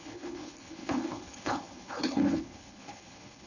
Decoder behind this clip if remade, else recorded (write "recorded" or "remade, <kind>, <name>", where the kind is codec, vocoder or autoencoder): remade, codec, HILCodec